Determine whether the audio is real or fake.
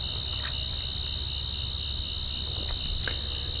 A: real